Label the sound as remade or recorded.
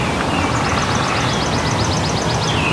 recorded